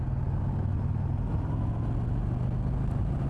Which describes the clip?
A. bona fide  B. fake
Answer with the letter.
A